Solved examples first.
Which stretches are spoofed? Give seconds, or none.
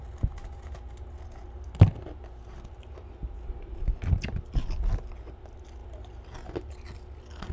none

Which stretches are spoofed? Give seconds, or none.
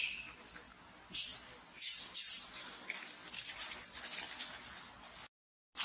none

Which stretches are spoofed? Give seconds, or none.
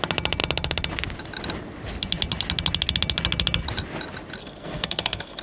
4.4-5.4 (codec, SNAC)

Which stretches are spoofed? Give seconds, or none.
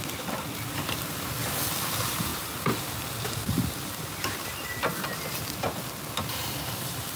0.0-1.4 (vocoder, BigVGAN v2); 1.9-7.2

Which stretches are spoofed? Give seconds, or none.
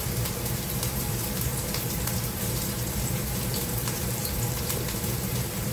0.0-5.7 (vocoder, BigVGAN v2)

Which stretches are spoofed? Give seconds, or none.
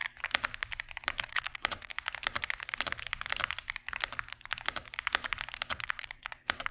1.2-1.9 (vocoder, WaveNeXt); 5.7-6.7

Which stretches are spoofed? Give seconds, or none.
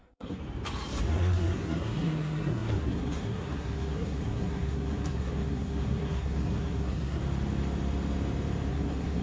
0.0-0.4 (codec, SNAC); 1.1-7.2; 8.7-9.2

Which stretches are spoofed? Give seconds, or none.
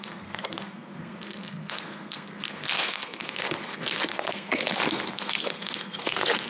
0.0-6.5 (codec, SNAC)